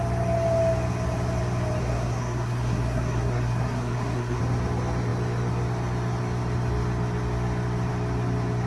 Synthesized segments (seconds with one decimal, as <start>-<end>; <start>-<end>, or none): 1.8-4.4